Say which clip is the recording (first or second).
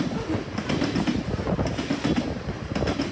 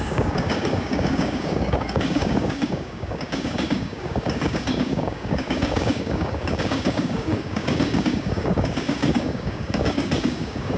first